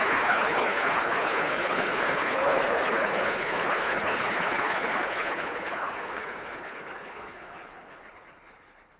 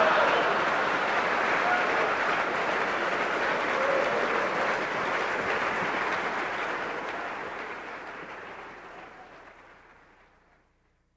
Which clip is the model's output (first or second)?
first